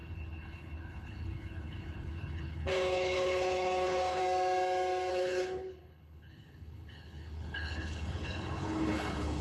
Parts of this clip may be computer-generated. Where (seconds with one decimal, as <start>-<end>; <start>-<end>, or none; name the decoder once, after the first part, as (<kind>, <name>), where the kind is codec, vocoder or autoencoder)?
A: 0.0-4.2 (codec, HILCodec); 5.1-9.4